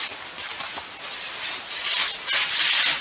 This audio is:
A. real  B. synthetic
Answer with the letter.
A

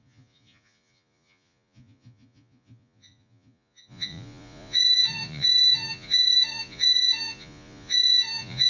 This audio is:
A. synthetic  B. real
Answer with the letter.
A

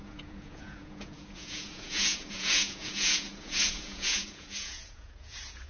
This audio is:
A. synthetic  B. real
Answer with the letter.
A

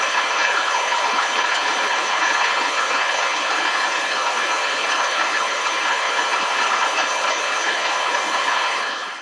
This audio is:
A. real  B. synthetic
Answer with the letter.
B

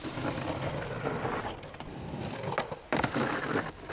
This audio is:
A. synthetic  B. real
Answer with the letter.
B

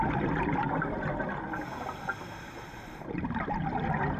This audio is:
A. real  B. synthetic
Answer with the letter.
A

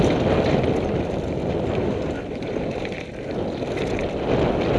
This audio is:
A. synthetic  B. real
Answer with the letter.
B